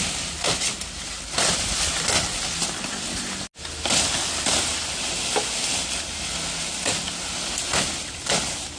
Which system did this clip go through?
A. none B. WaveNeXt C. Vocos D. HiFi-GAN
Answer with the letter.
A